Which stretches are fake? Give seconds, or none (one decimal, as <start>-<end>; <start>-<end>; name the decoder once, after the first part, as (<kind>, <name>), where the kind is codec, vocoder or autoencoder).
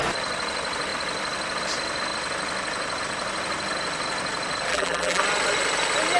4.7-5.2 (vocoder, BigVGAN v2)